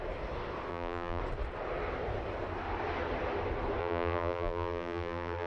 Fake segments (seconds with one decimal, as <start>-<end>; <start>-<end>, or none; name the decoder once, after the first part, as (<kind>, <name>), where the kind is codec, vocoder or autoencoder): 0.7-1.2 (vocoder, BigVGAN v2); 3.8-5.5